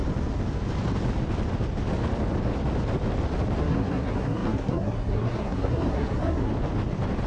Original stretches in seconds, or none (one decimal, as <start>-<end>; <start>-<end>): 0.0-3.6; 6.5-7.3